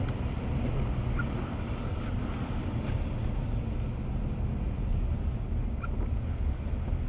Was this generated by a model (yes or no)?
no